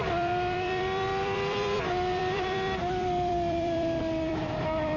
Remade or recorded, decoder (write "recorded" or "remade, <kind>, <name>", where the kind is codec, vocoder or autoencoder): remade, vocoder, BigVGAN v2